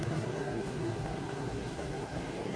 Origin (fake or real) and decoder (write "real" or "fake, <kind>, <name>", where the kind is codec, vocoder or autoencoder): fake, codec, SNAC